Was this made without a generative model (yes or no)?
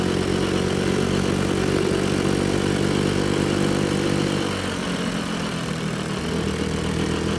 yes